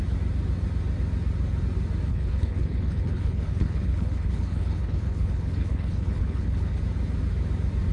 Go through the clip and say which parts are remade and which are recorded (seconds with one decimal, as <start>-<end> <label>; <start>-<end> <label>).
0.0-2.1 recorded; 2.1-6.8 remade; 6.8-7.9 recorded